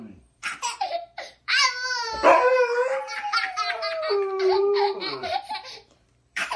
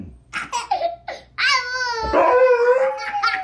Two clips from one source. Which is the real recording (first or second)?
second